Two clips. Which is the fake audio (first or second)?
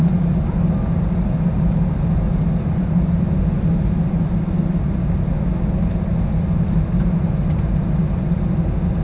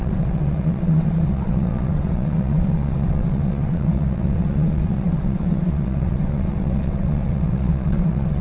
second